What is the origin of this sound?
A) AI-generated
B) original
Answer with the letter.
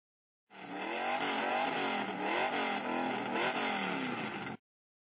B